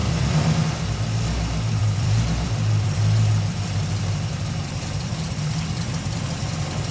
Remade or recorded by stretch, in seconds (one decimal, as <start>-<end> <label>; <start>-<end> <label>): 0.0-1.2 remade; 1.2-1.8 recorded; 1.8-5.9 remade; 5.9-6.9 recorded